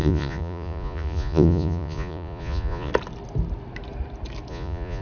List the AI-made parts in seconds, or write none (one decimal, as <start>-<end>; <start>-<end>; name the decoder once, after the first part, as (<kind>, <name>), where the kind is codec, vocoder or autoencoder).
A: 0.0-2.9 (vocoder, Vocos); 4.5-5.0